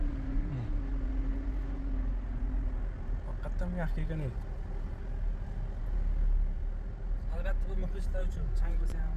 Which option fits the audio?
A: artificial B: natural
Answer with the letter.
B